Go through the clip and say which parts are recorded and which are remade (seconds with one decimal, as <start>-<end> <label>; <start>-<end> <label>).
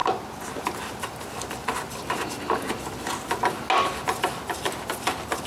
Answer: 0.0-5.5 recorded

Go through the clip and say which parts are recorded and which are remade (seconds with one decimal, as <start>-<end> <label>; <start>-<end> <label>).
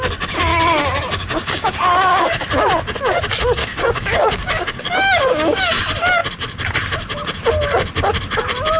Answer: 0.0-0.5 recorded; 0.5-2.3 remade; 2.3-3.6 recorded; 3.6-5.8 remade; 5.8-8.8 recorded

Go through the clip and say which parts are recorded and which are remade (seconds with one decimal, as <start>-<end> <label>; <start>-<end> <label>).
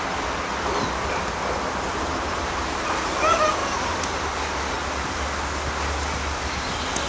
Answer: 0.0-1.9 recorded; 1.9-2.9 remade; 2.9-7.1 recorded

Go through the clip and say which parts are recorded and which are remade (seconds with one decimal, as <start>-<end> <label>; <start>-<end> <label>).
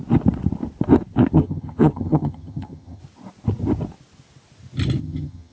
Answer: 0.0-1.3 recorded; 1.3-3.0 remade; 3.0-5.0 recorded; 5.0-5.5 remade